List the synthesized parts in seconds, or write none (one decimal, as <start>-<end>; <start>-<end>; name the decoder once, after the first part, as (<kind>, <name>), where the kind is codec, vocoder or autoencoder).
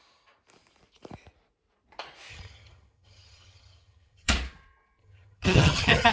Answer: 2.3-4.3 (vocoder, HiFi-GAN); 5.0-6.1